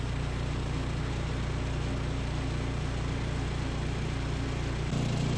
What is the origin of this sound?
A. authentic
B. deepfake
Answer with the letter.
A